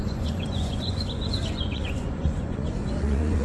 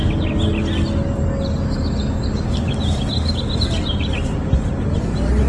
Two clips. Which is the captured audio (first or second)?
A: second